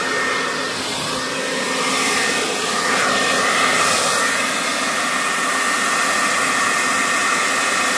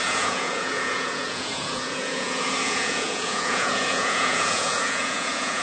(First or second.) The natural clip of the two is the first